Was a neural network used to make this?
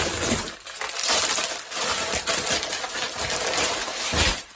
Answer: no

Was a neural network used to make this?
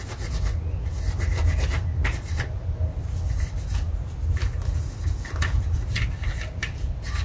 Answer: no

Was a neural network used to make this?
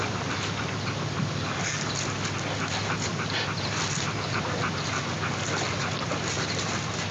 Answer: no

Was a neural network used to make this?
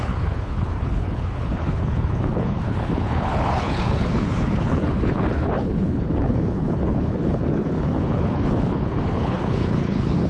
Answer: yes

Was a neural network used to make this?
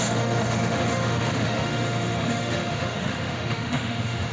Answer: yes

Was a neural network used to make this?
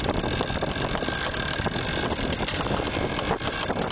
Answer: no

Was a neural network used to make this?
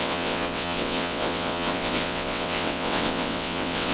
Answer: yes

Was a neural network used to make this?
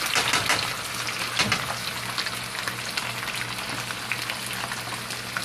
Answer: no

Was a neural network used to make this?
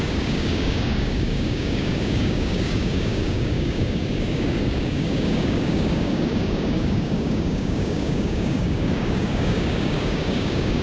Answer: yes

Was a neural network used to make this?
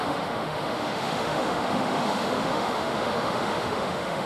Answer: yes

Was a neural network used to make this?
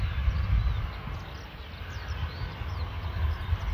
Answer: no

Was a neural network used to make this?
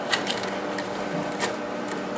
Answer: yes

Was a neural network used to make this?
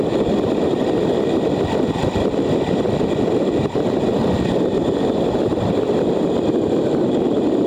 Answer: no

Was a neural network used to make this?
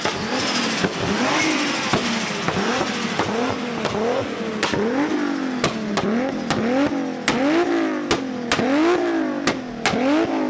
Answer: no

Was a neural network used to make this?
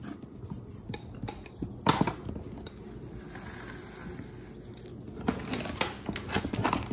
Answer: no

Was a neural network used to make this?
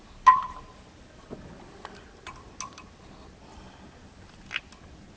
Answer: no